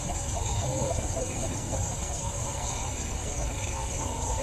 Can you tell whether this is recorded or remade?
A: remade